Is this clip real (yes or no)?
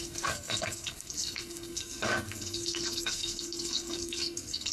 no